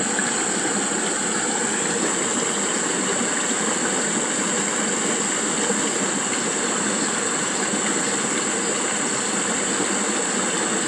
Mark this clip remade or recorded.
recorded